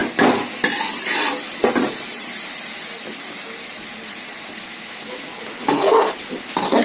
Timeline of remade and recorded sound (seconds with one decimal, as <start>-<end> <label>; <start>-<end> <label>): 0.0-4.7 recorded; 4.7-5.3 remade; 5.3-6.8 recorded